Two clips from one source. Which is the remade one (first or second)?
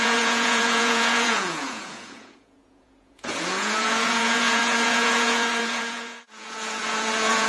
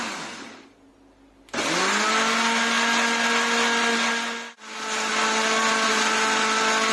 first